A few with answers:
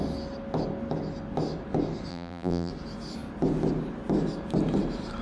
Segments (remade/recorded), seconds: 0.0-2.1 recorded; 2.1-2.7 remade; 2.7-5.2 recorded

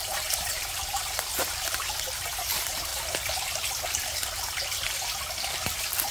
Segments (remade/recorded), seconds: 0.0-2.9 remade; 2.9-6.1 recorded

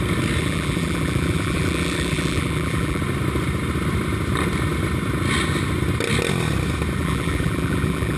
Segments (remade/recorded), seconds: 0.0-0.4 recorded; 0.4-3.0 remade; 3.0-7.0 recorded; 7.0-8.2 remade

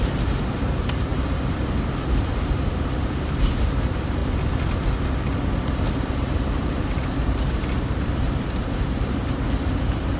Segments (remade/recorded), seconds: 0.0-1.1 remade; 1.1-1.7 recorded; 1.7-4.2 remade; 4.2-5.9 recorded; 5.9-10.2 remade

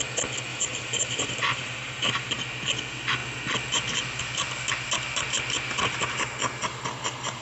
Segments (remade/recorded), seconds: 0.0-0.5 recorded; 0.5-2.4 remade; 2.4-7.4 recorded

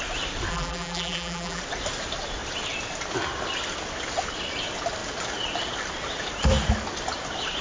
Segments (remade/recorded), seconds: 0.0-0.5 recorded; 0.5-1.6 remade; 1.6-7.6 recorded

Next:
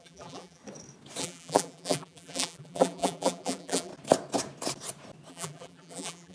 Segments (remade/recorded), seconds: 0.0-0.6 remade; 0.6-1.2 recorded; 1.2-3.9 remade; 3.9-5.3 recorded; 5.3-6.3 remade

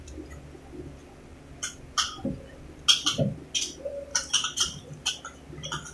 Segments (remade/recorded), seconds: 0.0-4.1 recorded; 4.1-5.1 remade; 5.1-5.9 recorded